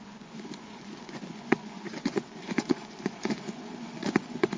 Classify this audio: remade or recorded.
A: remade